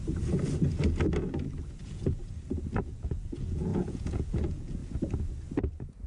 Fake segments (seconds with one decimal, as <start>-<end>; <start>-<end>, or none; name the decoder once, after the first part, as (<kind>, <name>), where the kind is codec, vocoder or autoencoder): 1.8-2.2 (vocoder, Vocos); 2.8-4.8